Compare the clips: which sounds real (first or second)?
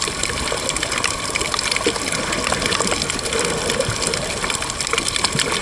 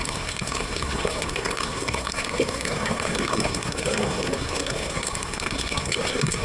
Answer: first